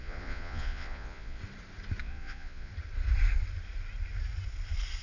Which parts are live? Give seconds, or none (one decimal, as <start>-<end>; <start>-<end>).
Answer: 1.4-2.0; 2.7-5.0